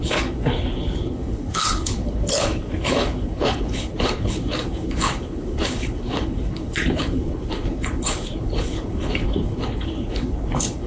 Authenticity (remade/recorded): remade